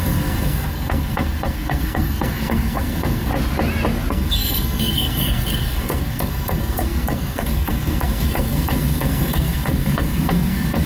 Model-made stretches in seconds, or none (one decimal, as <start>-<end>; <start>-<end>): 0.0-3.3; 4.1-10.9